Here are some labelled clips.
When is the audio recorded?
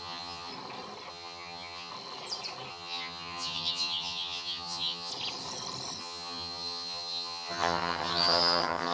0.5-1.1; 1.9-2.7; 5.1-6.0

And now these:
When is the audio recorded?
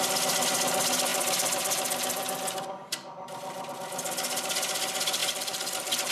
0.0-1.1; 3.7-5.2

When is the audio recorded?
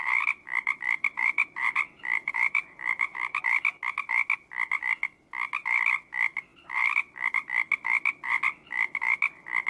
3.4-9.7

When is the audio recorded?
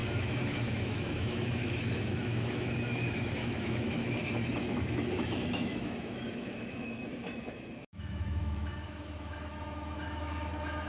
none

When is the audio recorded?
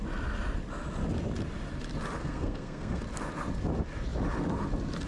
0.0-2.2; 3.0-5.1